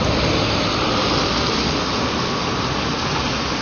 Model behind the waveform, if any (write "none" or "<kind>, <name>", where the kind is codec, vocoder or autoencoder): none